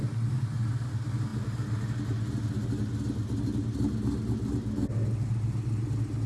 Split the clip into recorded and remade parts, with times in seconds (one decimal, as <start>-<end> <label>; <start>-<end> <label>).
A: 0.0-6.3 recorded